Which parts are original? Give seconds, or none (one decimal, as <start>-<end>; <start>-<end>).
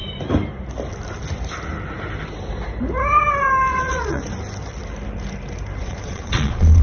0.0-3.7; 4.2-5.8